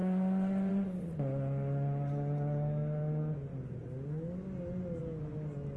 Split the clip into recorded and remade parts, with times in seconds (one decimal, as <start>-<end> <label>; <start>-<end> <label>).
0.0-5.8 recorded